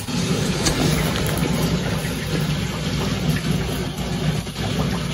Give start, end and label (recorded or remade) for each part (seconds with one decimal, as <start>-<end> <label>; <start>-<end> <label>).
0.0-5.1 recorded